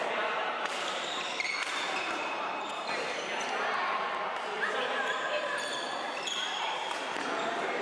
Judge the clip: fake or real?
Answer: fake